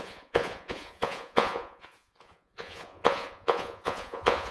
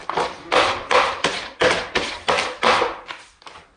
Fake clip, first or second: first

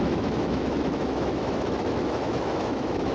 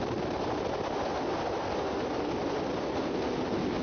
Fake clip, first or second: first